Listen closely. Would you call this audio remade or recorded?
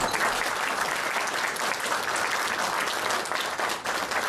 recorded